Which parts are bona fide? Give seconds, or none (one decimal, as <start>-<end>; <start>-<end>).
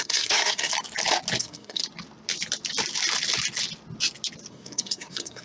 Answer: 0.7-1.4; 1.8-4.5